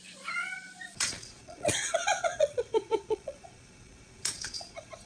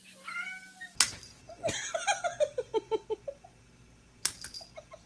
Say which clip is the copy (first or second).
first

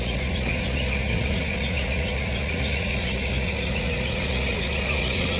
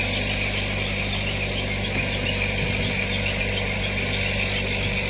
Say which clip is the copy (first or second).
first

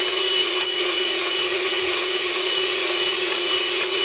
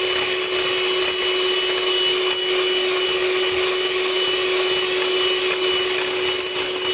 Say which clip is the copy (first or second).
first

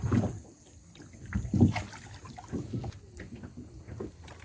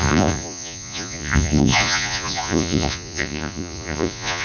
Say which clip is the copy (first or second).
second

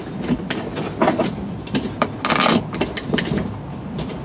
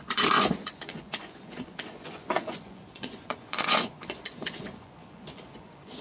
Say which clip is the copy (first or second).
second